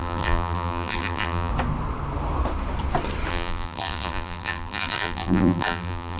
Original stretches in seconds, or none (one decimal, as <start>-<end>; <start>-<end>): 1.5-3.3